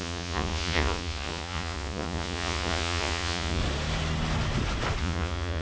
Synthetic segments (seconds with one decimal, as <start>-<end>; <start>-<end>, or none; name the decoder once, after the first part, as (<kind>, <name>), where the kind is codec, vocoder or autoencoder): 0.0-3.6 (vocoder, Vocos); 5.0-5.6